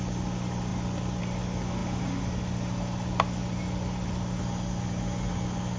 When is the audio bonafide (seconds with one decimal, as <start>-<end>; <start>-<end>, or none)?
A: 0.0-5.8

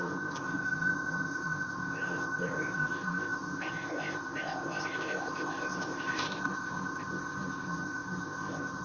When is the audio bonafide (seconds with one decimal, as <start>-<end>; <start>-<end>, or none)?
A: none

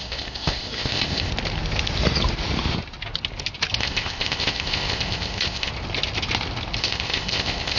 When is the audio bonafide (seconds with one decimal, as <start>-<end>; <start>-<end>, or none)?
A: 1.3-3.8; 5.7-6.8

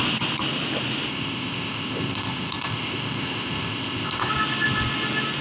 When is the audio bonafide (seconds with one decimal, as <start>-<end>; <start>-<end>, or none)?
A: 0.0-1.1; 4.3-5.4

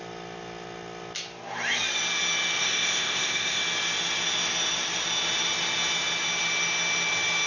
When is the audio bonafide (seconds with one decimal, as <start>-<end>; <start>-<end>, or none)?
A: 0.0-2.6; 3.6-7.5

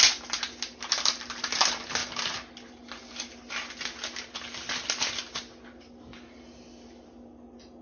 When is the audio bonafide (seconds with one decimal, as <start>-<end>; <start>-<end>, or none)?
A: 0.0-7.8

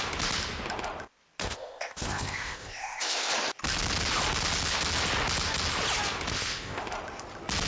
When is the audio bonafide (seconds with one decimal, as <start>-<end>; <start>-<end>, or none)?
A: 0.0-1.4; 3.3-6.3; 6.8-7.7

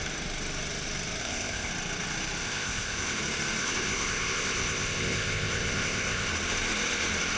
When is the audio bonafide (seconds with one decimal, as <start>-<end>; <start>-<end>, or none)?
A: 0.0-1.2; 1.7-2.4; 3.2-3.6; 6.3-7.4